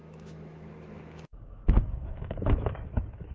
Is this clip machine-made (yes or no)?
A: yes